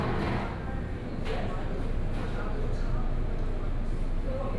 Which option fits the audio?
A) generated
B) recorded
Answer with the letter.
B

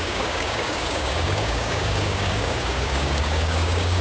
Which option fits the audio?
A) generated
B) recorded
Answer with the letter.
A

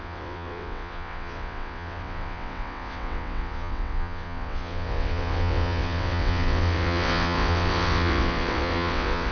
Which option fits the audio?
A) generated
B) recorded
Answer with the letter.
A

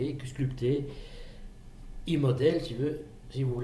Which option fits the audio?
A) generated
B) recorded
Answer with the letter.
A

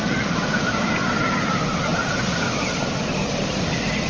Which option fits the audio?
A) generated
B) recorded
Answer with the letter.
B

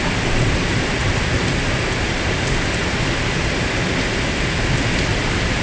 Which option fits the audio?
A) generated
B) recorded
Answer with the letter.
B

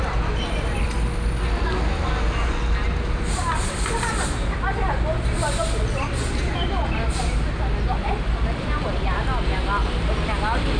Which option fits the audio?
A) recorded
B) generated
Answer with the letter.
A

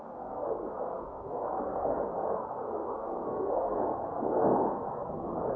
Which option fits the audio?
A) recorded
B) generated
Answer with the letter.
B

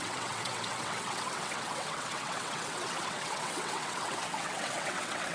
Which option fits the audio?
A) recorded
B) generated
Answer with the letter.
B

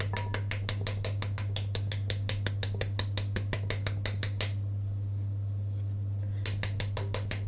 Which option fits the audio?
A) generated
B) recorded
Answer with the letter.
B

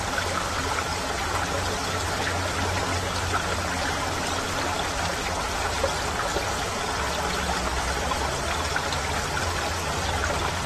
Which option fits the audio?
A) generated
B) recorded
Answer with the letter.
B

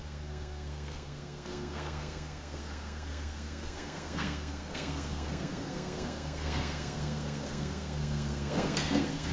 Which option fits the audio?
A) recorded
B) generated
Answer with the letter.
B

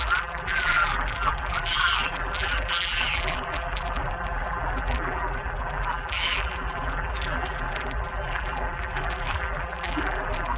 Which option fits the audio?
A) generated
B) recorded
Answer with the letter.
A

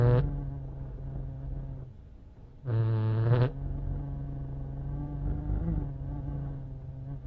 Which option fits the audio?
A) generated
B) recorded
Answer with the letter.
B